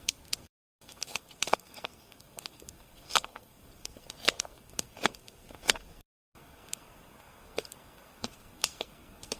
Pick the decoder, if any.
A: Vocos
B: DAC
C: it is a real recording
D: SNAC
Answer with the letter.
D